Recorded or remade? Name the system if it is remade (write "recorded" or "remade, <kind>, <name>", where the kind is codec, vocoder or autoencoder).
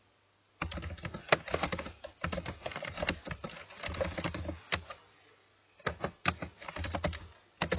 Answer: recorded